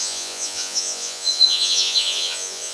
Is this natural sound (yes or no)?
no